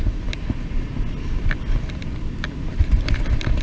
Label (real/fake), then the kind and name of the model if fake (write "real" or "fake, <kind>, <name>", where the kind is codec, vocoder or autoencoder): real